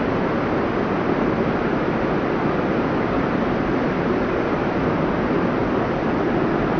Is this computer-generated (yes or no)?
no